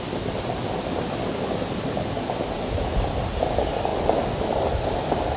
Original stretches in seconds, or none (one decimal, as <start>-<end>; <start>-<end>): 0.0-5.4